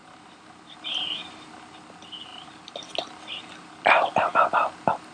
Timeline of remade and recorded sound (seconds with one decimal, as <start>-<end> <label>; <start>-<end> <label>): 0.0-1.3 remade; 1.3-5.1 recorded